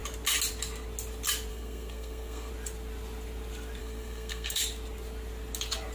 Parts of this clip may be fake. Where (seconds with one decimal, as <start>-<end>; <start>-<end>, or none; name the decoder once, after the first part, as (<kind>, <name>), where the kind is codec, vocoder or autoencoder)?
1.5-2.5 (codec, SNAC); 3.8-4.6